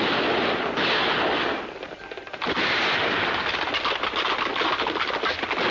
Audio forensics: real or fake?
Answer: real